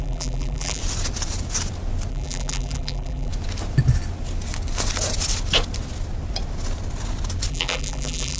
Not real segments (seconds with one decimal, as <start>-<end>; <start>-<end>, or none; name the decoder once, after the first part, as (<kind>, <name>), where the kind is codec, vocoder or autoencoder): 0.0-0.8 (vocoder, BigVGAN v2); 2.1-3.3; 7.5-8.4